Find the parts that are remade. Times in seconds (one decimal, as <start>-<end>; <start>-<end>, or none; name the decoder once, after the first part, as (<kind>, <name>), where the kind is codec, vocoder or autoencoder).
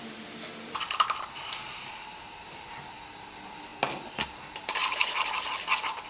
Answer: none